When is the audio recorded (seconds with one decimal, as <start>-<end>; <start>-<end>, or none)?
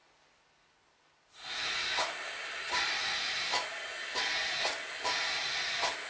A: 0.0-6.1